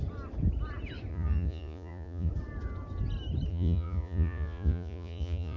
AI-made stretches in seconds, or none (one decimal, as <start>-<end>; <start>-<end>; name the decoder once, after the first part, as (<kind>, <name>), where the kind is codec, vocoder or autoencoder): 1.1-2.3 (vocoder, Vocos); 3.5-5.6